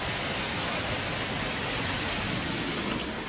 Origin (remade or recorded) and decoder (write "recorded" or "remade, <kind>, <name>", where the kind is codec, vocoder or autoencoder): recorded